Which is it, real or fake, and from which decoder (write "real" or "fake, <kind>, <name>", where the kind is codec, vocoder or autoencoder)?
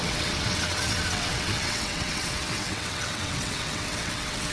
fake, vocoder, WaveNeXt